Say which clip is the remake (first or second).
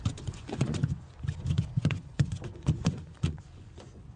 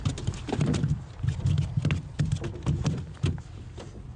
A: first